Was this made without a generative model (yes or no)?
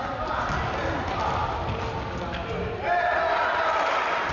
yes